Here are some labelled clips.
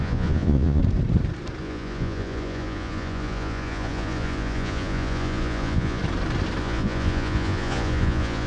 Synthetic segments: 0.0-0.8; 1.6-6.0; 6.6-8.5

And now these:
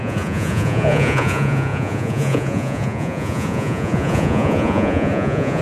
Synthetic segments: 0.0-5.6

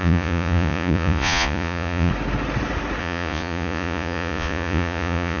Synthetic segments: 0.0-2.1; 3.0-5.4

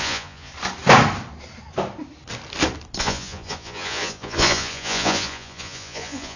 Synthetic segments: 0.0-0.5; 3.0-6.4

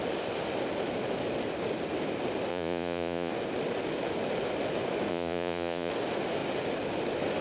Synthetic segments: 2.5-3.3; 5.1-5.9